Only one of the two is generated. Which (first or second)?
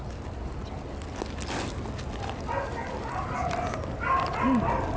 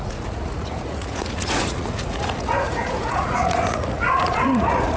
second